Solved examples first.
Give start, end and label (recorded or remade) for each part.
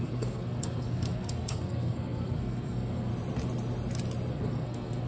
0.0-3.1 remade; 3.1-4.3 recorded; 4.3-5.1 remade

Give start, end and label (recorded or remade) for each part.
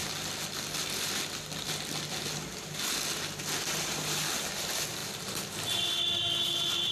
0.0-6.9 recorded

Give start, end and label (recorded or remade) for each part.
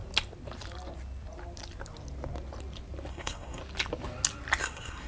0.0-3.1 recorded; 3.1-3.6 remade; 3.6-4.6 recorded; 4.6-5.1 remade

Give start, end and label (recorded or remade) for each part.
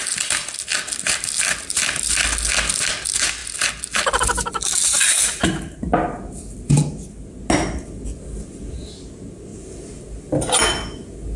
0.0-11.4 recorded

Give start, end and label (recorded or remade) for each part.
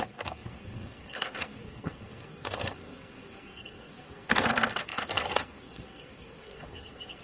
0.0-7.2 remade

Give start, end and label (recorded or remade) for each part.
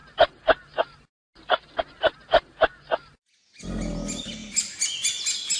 0.0-5.6 recorded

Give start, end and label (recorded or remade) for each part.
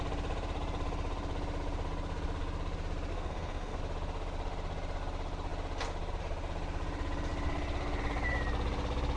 0.0-3.1 recorded; 3.1-3.8 remade; 3.8-9.2 recorded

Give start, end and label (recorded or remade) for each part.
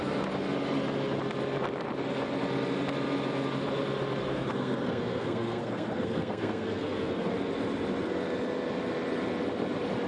0.0-4.2 recorded; 4.2-7.3 remade; 7.3-10.1 recorded